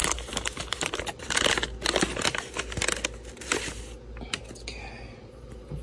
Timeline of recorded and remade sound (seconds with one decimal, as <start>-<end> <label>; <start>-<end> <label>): 0.0-5.8 recorded